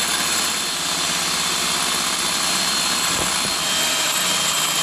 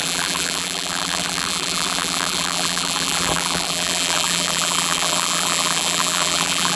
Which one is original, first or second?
first